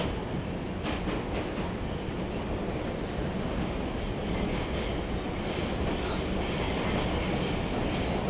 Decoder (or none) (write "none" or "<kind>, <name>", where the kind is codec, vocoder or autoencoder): none